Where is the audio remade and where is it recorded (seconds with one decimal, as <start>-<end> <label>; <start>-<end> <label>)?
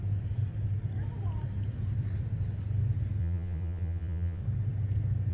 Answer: 0.0-3.2 recorded; 3.2-4.4 remade; 4.4-5.3 recorded